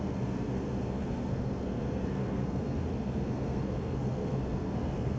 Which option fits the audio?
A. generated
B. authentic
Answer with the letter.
A